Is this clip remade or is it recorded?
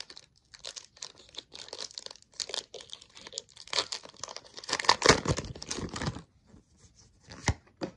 recorded